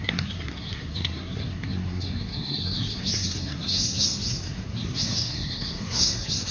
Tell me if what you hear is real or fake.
fake